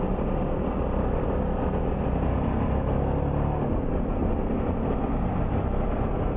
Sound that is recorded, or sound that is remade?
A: recorded